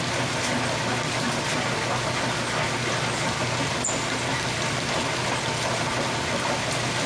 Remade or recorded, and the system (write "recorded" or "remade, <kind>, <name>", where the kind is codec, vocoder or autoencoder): recorded